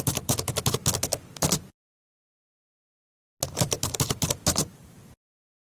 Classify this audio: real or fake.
real